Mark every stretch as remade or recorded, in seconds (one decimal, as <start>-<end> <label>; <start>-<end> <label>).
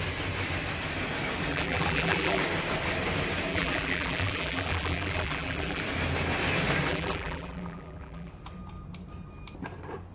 0.0-1.5 recorded; 1.5-2.4 remade; 2.4-3.5 recorded; 3.5-5.8 remade; 5.8-6.9 recorded; 6.9-8.3 remade; 8.3-10.1 recorded